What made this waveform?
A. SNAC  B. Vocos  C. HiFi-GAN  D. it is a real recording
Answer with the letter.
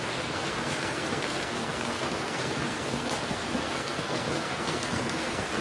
A